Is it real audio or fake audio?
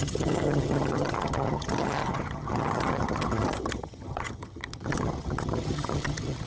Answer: fake